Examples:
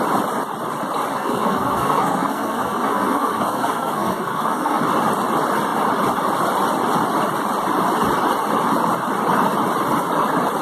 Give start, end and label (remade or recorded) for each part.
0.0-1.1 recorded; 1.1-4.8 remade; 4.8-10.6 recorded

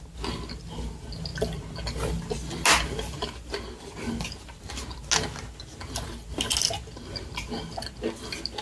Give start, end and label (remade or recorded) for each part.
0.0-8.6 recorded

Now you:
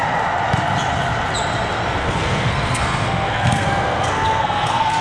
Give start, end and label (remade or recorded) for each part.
0.0-2.0 recorded; 2.0-5.0 remade

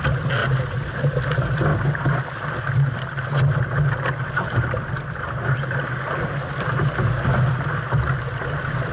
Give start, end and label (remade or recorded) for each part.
0.0-0.4 recorded; 0.4-1.0 remade; 1.0-8.9 recorded

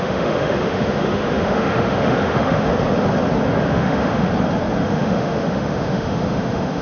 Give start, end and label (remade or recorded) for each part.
0.0-2.7 remade; 2.7-3.6 recorded; 3.6-4.3 remade; 4.3-4.8 recorded; 4.8-6.8 remade

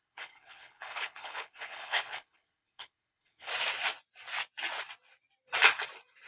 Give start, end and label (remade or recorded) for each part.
0.0-3.5 remade; 3.5-6.3 recorded

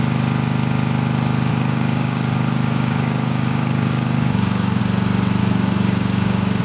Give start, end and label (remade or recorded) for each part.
0.0-1.5 recorded; 1.5-4.8 remade; 4.8-5.4 recorded; 5.4-6.6 remade

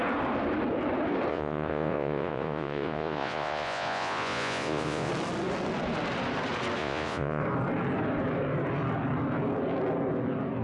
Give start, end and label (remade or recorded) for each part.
0.0-1.3 recorded; 1.3-5.1 remade; 5.1-6.8 recorded; 6.8-7.4 remade; 7.4-10.6 recorded